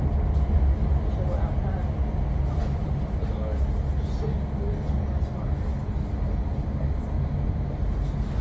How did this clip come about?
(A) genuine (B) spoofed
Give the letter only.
A